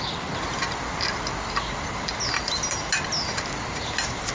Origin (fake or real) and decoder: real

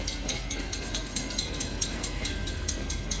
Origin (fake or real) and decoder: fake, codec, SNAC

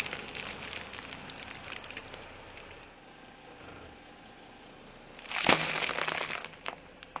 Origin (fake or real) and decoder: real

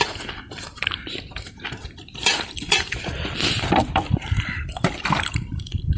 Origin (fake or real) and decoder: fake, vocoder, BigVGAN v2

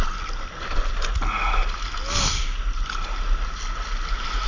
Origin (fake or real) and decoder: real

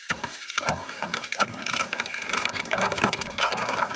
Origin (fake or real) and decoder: fake, codec, SNAC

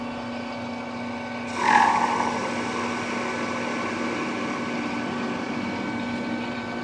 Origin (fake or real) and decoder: real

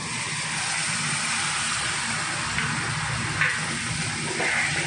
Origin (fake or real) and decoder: real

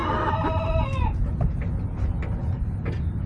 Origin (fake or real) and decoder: real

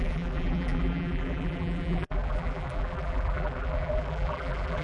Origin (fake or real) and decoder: fake, vocoder, BigVGAN v2